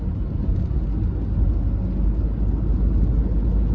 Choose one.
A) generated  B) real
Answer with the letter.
B